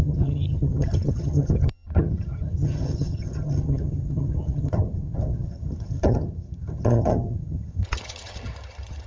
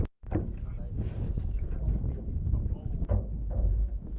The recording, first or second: second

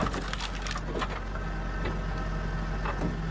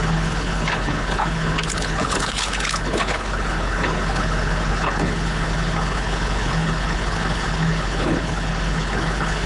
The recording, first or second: first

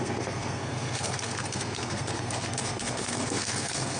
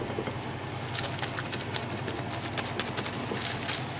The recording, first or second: second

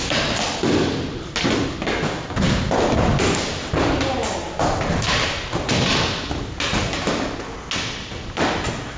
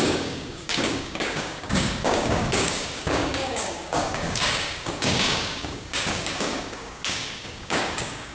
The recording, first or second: first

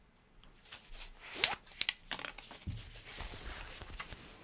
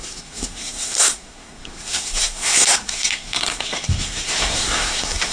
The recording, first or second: first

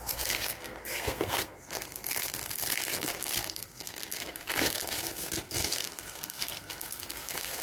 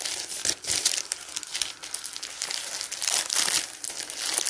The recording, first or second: second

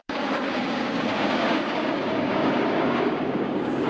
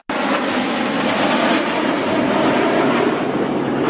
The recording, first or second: second